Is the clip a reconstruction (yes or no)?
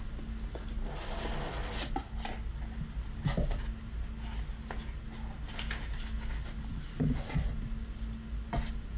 no